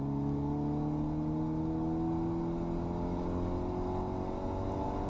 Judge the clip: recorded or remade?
recorded